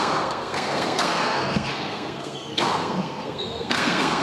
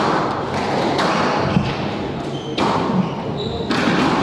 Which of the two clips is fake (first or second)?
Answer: first